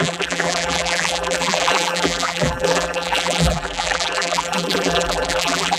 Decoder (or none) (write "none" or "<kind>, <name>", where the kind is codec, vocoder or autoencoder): vocoder, BigVGAN v2